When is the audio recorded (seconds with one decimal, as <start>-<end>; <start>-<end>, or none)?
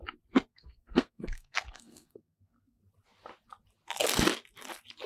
0.0-0.5; 2.8-5.1